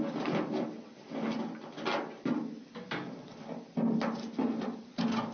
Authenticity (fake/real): real